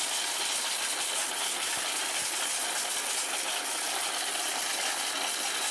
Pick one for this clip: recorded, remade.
recorded